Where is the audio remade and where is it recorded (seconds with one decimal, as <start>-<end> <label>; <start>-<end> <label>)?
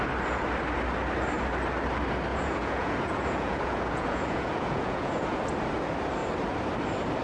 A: 0.0-2.3 recorded; 2.3-5.4 remade; 5.4-7.2 recorded